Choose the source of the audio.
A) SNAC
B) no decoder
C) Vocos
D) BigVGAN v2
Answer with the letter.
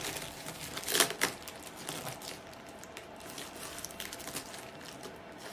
B